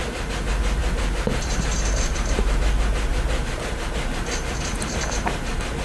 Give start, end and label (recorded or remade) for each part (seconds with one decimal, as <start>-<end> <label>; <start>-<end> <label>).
0.0-0.8 recorded; 0.8-2.6 remade; 2.6-5.8 recorded